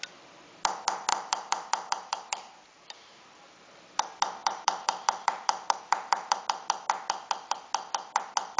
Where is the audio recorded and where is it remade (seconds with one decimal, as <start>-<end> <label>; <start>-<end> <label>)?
0.0-1.1 recorded; 1.1-3.3 remade; 3.3-4.4 recorded; 4.4-6.4 remade; 6.4-8.6 recorded